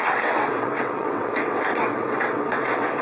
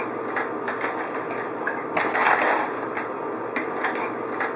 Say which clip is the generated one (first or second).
first